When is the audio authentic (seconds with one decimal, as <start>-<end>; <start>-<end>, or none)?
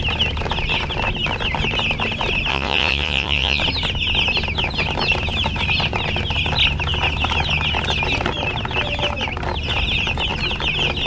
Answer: 0.0-2.5; 3.6-11.1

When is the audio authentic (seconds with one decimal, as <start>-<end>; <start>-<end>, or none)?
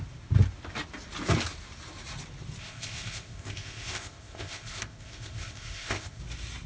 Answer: 0.0-2.6; 6.2-6.7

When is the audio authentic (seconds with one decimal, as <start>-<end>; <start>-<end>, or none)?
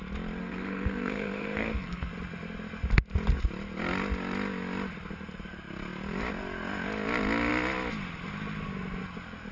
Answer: 0.0-0.4; 2.1-9.5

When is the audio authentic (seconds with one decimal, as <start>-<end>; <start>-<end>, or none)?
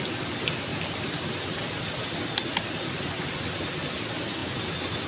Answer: 0.0-5.1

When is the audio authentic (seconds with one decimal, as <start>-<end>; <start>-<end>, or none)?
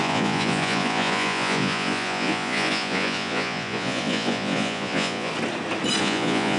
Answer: 5.3-6.0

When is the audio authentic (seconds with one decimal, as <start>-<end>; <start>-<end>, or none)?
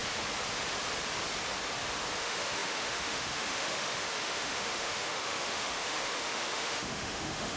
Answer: 0.0-2.2